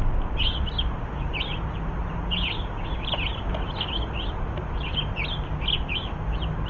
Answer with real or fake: real